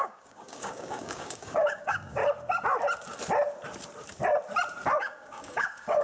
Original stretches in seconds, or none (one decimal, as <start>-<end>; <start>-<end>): 2.2-5.0

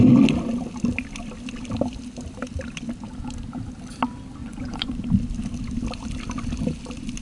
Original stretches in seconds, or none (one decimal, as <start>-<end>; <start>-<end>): 0.0-4.4; 5.0-7.2

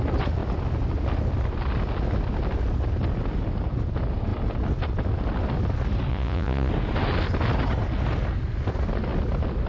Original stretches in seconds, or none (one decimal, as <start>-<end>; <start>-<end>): 0.0-6.1; 6.7-9.7

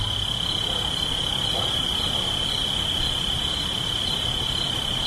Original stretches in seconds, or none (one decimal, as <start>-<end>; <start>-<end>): 0.0-5.1

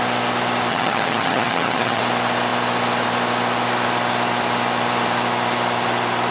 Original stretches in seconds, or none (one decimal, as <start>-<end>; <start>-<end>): 0.0-0.7; 2.0-6.3

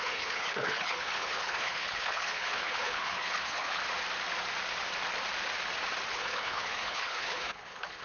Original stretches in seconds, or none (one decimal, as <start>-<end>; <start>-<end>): 3.8-6.1

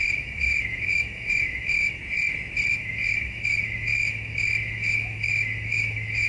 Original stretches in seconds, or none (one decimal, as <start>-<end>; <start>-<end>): 2.0-2.7

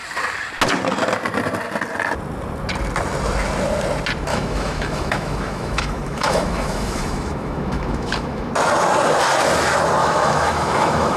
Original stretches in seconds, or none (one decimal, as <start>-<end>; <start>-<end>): 0.0-4.3; 8.5-10.0